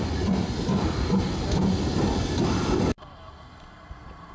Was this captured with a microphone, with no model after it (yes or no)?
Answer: yes